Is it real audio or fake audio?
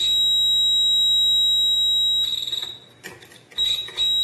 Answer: real